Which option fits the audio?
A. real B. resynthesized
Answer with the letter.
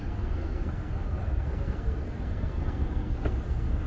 B